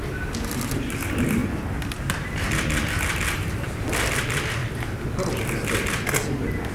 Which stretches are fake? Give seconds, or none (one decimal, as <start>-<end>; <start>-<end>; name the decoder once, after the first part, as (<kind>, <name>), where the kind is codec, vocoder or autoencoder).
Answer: 1.4-2.0 (vocoder, BigVGAN v2); 4.6-5.3